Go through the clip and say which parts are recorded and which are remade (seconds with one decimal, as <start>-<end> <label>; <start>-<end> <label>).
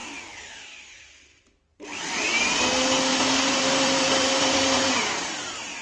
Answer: 0.0-1.7 recorded; 1.7-2.2 remade; 2.2-3.1 recorded; 3.1-5.0 remade; 5.0-5.8 recorded